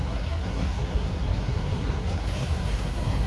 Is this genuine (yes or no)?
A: no